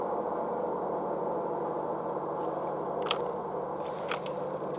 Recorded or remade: recorded